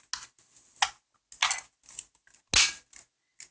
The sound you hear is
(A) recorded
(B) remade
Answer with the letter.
A